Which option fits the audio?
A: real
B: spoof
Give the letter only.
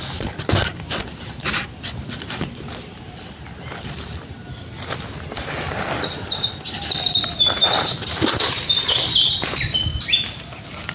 A